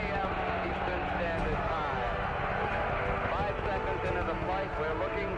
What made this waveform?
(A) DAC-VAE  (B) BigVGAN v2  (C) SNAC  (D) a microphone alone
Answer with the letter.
D